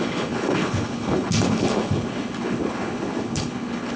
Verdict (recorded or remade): remade